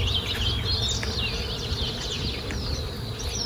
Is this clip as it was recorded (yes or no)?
yes